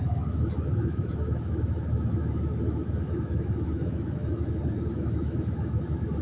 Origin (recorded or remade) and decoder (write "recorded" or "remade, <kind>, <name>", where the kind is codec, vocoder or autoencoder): remade, autoencoder, DAC-VAE